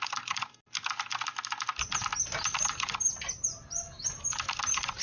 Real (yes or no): yes